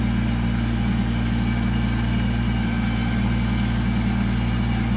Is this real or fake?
real